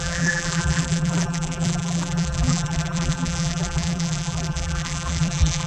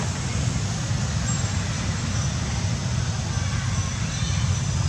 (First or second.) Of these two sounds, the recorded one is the second